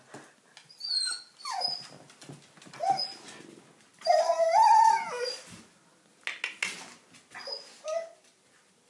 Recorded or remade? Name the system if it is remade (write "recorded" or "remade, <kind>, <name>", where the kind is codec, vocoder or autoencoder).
recorded